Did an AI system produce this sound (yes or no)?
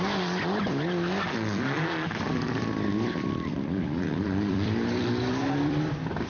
yes